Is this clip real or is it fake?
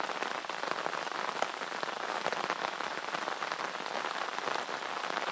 fake